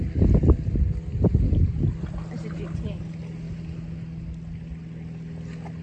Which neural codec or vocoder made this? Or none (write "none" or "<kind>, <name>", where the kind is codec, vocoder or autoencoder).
none